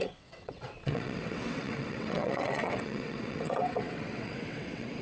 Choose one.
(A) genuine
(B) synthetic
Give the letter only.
B